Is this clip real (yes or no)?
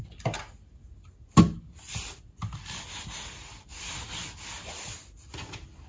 yes